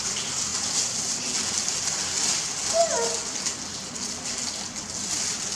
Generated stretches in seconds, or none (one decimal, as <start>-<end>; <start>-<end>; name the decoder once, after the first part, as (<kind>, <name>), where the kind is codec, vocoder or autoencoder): none